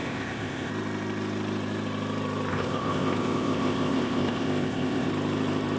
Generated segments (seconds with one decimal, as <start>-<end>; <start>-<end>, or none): 0.0-0.7; 2.5-5.1